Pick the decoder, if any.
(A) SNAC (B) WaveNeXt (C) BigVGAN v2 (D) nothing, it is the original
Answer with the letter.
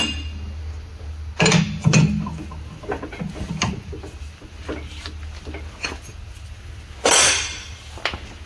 D